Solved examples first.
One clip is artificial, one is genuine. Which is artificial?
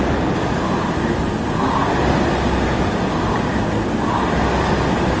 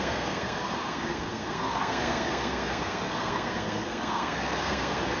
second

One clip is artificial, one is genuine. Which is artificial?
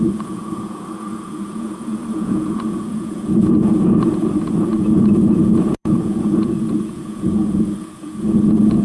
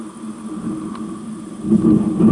first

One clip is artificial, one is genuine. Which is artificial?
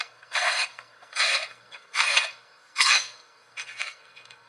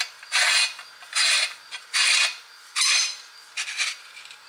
first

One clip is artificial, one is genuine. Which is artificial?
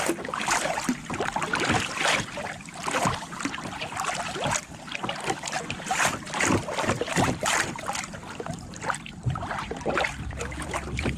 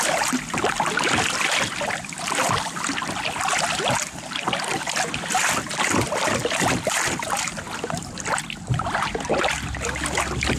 first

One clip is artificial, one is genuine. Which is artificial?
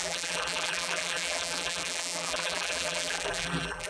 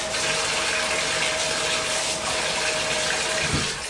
first